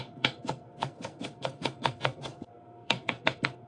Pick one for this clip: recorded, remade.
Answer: remade